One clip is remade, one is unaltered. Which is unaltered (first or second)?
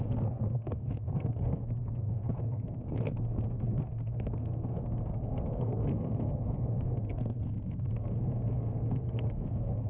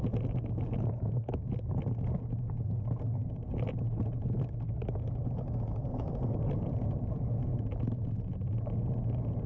second